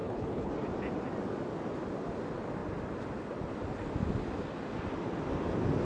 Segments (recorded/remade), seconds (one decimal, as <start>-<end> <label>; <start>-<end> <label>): 0.0-0.5 remade; 0.5-5.8 recorded